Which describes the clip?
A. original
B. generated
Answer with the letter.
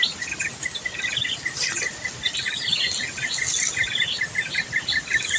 A